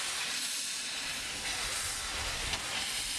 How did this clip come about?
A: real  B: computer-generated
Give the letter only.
A